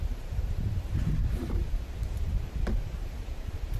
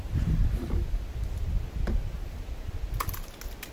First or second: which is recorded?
second